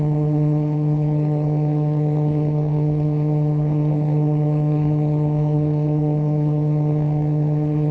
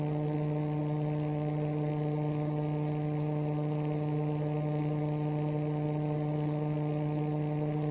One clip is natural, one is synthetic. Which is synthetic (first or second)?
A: first